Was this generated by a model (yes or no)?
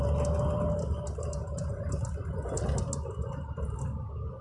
no